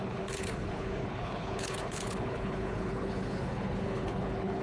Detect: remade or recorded remade